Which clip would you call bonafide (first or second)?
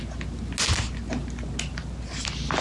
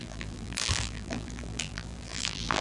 first